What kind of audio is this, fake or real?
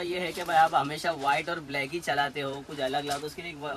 fake